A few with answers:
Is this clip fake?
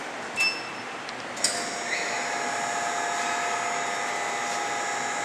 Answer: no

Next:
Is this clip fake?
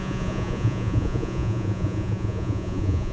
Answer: yes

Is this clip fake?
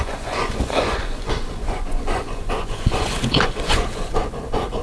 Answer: yes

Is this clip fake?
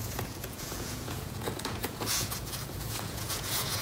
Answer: yes